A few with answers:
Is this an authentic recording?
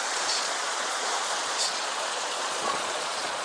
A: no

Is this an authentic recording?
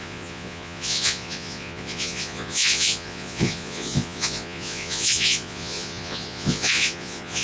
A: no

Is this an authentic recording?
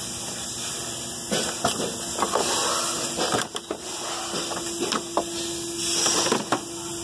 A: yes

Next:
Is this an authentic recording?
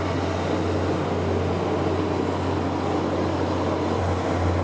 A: yes